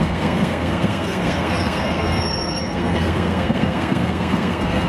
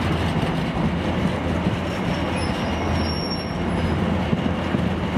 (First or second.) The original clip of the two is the second